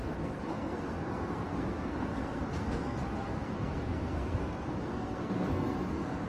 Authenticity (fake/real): fake